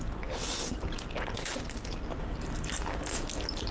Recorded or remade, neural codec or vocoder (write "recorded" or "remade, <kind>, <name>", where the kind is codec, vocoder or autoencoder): recorded